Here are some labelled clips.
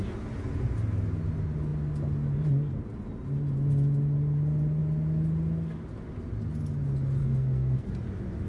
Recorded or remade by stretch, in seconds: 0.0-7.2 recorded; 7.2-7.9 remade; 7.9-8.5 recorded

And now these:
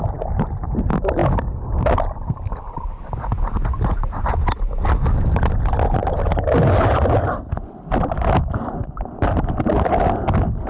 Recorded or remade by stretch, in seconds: 0.0-10.7 recorded

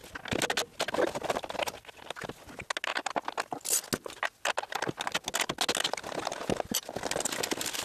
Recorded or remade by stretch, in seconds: 0.0-7.8 recorded